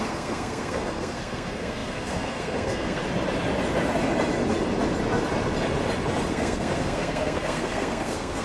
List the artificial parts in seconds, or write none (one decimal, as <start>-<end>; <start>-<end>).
0.0-3.0; 6.3-8.4